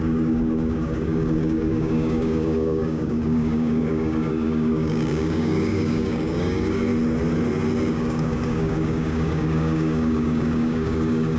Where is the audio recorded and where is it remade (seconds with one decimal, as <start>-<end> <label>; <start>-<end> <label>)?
0.0-6.9 remade; 6.9-7.9 recorded; 7.9-11.4 remade